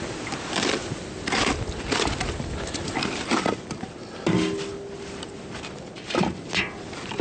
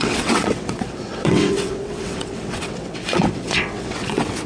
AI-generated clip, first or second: second